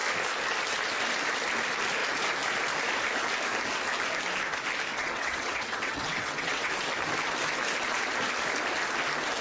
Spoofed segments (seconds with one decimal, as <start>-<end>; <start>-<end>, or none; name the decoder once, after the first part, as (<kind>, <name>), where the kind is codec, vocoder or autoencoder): 4.9-6.7 (vocoder, WaveNeXt)